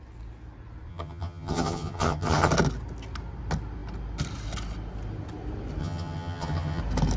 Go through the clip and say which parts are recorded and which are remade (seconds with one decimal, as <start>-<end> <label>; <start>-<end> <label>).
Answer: 0.0-0.9 recorded; 0.9-2.5 remade; 2.5-5.8 recorded; 5.8-6.8 remade; 6.8-7.2 recorded

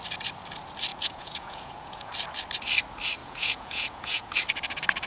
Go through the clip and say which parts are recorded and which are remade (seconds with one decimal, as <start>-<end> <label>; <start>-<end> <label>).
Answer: 0.0-0.9 recorded; 0.9-2.1 remade; 2.1-3.2 recorded; 3.2-4.3 remade; 4.3-5.1 recorded

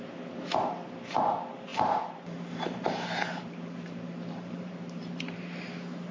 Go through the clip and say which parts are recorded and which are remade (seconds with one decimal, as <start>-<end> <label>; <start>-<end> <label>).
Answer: 0.0-1.7 recorded; 1.7-5.4 remade; 5.4-6.1 recorded

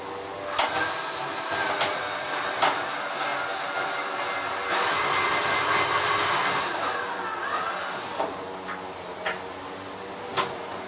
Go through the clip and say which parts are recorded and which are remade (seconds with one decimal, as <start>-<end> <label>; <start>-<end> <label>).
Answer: 0.0-10.9 recorded

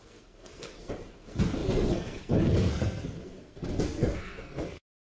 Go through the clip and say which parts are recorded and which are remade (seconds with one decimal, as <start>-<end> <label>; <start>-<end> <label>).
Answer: 0.0-5.1 remade

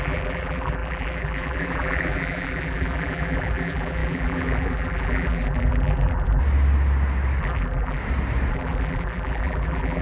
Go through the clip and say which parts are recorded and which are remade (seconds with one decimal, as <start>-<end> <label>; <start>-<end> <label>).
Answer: 0.0-6.4 remade; 6.4-7.4 recorded; 7.4-8.0 remade; 8.0-8.5 recorded; 8.5-10.0 remade

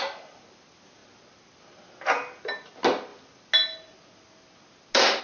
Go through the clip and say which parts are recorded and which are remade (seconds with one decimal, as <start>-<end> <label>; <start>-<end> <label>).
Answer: 0.0-5.2 recorded

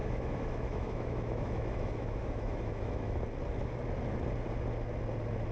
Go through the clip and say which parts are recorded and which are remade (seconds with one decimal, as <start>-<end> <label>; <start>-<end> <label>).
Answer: 0.0-3.2 remade; 3.2-5.5 recorded